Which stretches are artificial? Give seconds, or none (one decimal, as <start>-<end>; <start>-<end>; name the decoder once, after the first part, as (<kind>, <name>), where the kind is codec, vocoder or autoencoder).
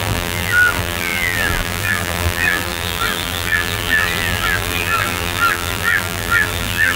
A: 0.0-7.0 (vocoder, BigVGAN v2)